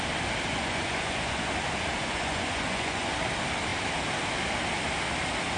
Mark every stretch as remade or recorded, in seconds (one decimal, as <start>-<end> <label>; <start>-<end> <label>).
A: 0.0-0.5 recorded; 0.5-1.5 remade; 1.5-2.0 recorded; 2.0-3.1 remade; 3.1-5.6 recorded